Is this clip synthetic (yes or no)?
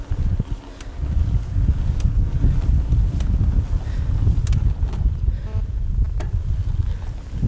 no